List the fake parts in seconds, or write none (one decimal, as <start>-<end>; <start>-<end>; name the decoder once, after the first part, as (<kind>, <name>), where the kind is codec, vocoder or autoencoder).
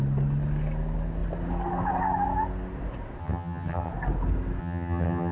3.2-3.9 (vocoder, HiFi-GAN); 4.6-5.3